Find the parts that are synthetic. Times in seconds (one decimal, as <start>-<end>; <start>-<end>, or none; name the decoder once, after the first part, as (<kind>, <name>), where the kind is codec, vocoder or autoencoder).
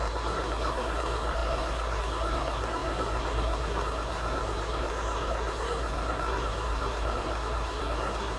0.0-8.4 (codec, SNAC)